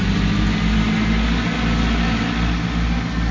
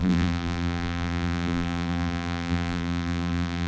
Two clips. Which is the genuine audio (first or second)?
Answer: first